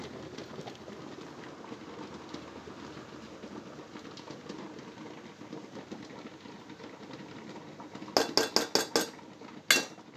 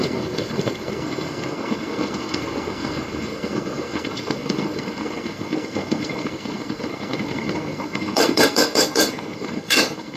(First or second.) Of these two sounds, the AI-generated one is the second